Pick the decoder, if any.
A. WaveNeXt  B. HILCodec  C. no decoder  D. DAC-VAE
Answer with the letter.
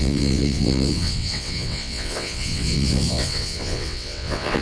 A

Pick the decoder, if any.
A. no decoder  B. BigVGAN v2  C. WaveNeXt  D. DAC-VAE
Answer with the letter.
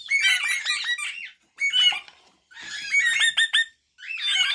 A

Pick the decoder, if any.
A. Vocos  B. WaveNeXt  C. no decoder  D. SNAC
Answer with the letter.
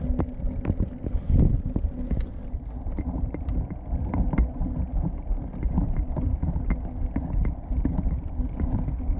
C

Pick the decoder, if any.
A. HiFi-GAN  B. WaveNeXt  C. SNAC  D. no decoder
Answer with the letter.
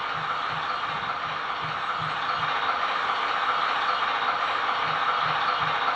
D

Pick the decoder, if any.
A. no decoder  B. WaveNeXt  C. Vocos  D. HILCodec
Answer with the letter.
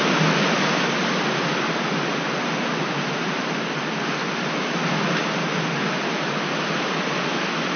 A